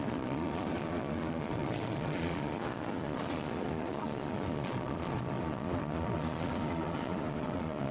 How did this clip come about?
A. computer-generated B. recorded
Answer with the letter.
A